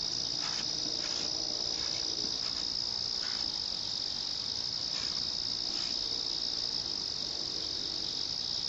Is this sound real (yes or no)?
yes